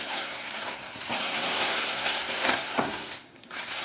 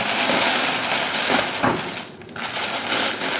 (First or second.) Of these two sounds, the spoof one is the first